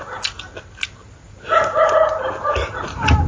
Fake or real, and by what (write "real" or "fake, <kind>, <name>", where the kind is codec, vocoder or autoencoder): real